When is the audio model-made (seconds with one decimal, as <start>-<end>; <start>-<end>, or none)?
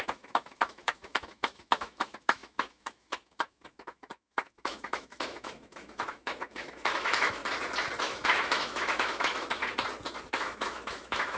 0.0-7.4; 8.0-9.6; 10.3-11.4